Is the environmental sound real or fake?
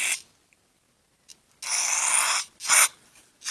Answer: real